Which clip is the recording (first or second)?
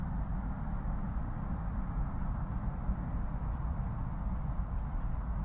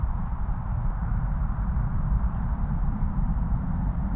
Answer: first